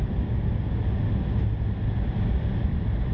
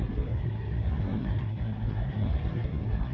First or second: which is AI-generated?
second